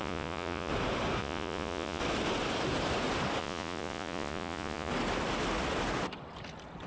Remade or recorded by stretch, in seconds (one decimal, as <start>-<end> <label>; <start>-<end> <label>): 0.0-0.7 remade; 0.7-1.2 recorded; 1.2-2.0 remade; 2.0-3.4 recorded; 3.4-4.9 remade; 4.9-6.9 recorded